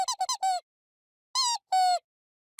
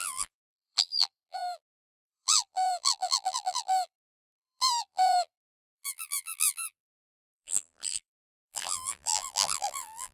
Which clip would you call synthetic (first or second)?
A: second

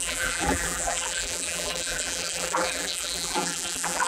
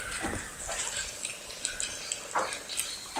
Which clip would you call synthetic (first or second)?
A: first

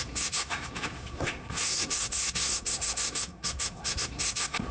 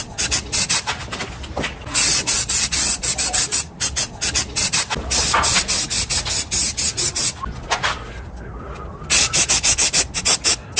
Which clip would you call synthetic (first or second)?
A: first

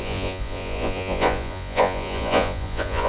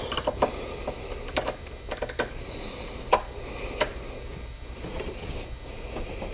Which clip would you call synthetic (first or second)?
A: first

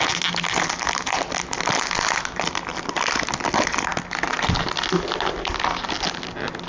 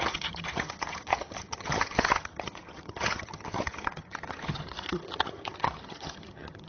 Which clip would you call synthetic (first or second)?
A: second